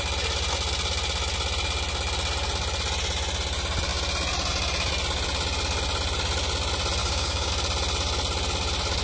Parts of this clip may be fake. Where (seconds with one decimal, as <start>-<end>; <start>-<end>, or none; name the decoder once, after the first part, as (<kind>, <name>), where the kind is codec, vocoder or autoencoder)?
7.0-7.5 (codec, DAC)

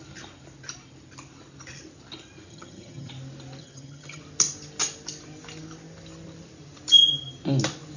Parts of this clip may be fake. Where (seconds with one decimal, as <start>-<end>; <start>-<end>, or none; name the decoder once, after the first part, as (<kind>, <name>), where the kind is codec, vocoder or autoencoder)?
2.5-3.1 (vocoder, HiFi-GAN); 3.6-4.2

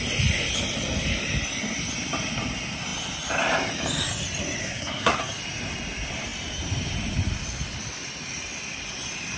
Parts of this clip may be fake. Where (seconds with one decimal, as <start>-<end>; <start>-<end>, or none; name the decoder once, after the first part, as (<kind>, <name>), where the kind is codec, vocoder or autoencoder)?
4.6-5.2 (codec, SNAC)

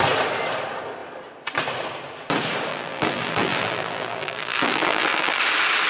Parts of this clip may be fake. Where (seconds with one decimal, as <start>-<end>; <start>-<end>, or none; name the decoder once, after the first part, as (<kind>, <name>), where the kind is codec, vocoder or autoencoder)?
2.7-5.4 (vocoder, BigVGAN v2)

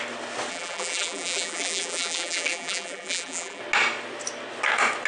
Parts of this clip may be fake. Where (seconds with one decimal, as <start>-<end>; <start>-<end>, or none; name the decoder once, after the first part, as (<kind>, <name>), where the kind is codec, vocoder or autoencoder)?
0.5-3.6 (vocoder, BigVGAN v2)